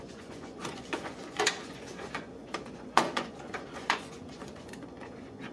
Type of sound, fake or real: fake